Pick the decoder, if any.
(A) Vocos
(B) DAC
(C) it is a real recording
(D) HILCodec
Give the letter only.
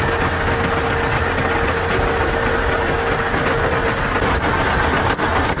C